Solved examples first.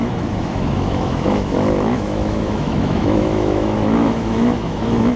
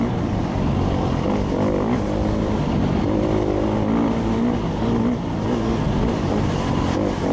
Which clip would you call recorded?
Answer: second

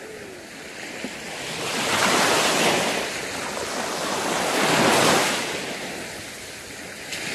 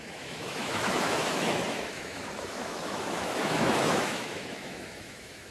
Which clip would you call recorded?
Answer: first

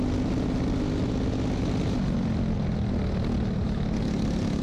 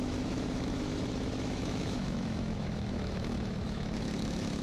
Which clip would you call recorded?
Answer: first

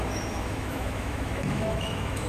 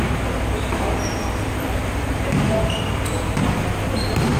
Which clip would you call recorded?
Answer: second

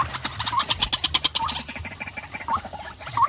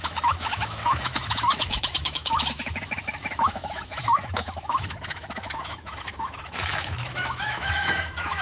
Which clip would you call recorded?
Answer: first